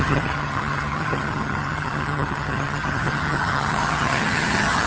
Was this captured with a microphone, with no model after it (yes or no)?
no